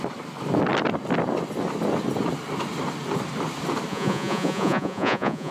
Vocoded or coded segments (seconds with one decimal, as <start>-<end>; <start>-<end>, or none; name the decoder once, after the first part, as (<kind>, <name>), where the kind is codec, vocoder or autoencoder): 3.9-5.5 (vocoder, Vocos)